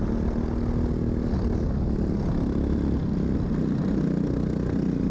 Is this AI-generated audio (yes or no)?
no